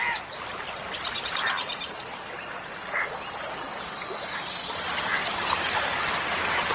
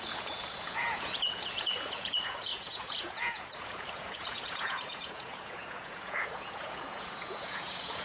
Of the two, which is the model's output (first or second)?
second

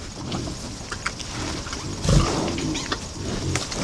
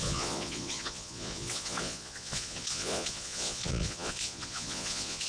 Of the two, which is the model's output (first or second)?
second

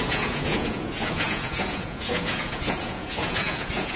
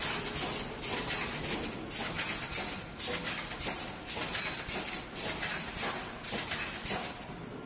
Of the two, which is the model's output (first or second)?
first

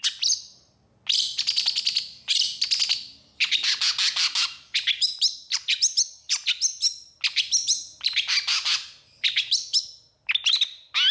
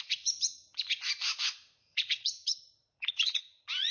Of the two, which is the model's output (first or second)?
second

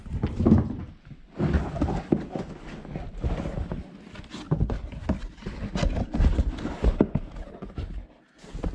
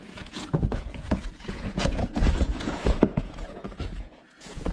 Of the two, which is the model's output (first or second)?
second